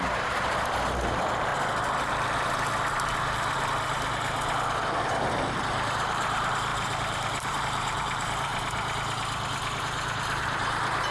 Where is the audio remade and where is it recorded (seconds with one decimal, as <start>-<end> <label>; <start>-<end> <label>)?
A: 0.0-1.5 remade; 1.5-5.6 recorded; 5.6-8.5 remade; 8.5-9.8 recorded; 9.8-11.1 remade